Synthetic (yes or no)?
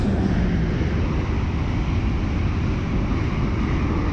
no